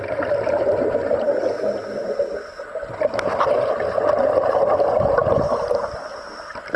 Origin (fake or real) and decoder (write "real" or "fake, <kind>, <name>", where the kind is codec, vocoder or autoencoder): real